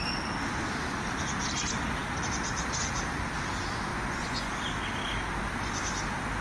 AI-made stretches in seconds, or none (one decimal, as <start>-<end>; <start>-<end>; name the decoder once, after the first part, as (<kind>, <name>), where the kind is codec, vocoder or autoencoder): 3.9-4.5 (vocoder, Vocos)